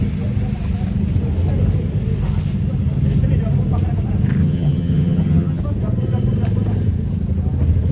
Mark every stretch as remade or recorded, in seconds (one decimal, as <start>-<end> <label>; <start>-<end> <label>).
0.0-4.4 recorded; 4.4-5.6 remade; 5.6-7.9 recorded